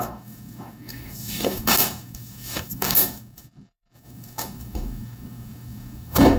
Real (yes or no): no